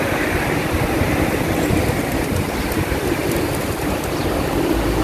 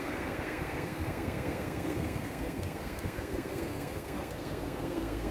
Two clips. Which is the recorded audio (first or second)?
first